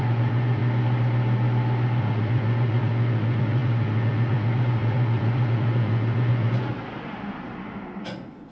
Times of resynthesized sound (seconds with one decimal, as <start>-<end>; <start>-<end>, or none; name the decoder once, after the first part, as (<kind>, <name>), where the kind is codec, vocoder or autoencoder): 0.0-0.6 (vocoder, Vocos); 2.0-6.7; 8.0-8.5

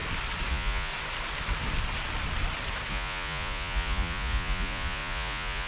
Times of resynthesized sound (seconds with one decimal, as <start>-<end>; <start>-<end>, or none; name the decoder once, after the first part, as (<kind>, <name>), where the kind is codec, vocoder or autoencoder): 0.5-0.9 (vocoder, Vocos); 2.9-5.7

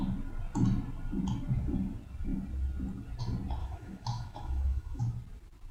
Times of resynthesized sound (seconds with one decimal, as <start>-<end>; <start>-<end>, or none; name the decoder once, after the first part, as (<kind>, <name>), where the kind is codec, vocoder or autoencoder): 3.6-5.0 (autoencoder, DAC-VAE)

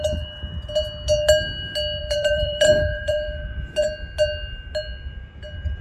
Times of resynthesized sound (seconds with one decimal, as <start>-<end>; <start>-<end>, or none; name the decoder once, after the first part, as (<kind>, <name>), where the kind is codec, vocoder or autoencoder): 2.0-3.7 (vocoder, BigVGAN v2)

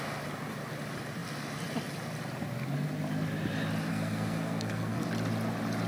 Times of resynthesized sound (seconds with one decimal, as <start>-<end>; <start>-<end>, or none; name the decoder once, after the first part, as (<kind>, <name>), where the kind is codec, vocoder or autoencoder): 3.9-5.1 (codec, SNAC)